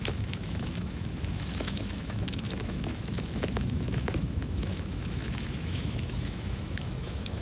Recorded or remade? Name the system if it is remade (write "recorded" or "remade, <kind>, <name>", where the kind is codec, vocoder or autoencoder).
remade, autoencoder, DAC-VAE